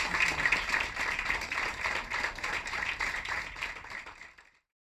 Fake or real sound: fake